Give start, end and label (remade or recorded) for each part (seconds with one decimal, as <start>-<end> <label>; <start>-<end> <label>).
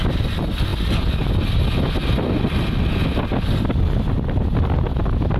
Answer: 0.0-5.4 recorded